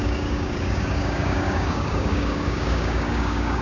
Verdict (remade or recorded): remade